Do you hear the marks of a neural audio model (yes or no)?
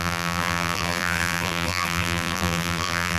yes